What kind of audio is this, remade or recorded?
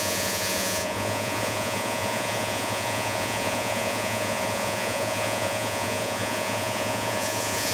remade